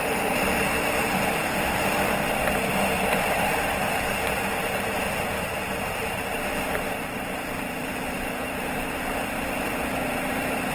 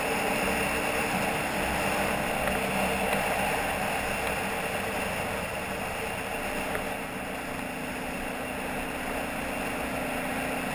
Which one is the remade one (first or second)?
first